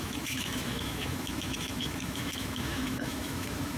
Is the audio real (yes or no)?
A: no